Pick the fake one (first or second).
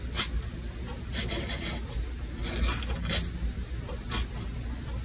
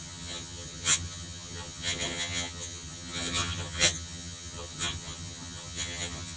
second